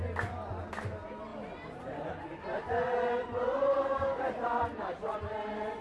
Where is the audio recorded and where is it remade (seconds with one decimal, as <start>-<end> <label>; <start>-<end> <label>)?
0.0-5.8 recorded